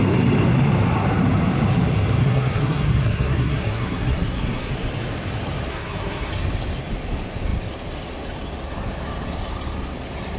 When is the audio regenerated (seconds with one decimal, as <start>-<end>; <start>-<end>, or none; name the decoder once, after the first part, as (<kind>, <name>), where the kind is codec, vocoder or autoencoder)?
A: 2.2-4.7 (codec, SNAC); 5.7-6.3